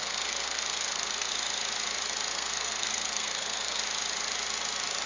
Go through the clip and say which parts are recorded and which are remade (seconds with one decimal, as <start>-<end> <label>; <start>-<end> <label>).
0.0-1.3 remade; 1.3-2.3 recorded; 2.3-3.8 remade; 3.8-5.1 recorded